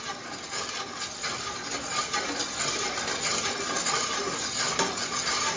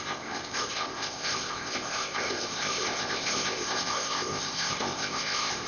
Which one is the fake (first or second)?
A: second